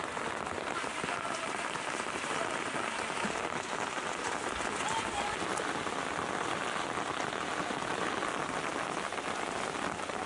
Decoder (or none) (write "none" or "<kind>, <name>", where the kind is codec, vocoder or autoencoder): none